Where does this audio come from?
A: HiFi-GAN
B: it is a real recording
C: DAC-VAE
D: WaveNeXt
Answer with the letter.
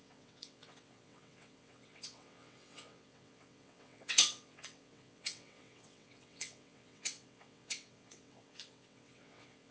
D